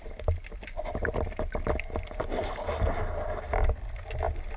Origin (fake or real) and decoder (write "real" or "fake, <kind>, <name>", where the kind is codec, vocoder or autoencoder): real